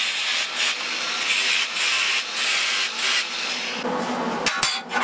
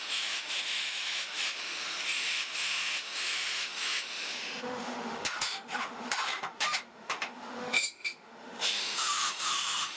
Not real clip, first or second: second